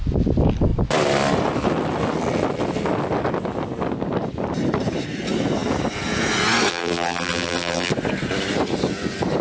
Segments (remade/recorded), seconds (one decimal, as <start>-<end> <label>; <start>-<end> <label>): 0.0-6.7 recorded; 6.7-7.9 remade; 7.9-9.4 recorded